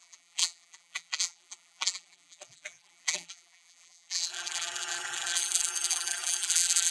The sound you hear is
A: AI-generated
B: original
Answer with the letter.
A